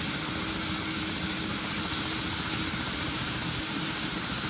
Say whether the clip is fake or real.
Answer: real